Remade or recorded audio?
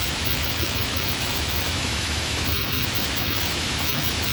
remade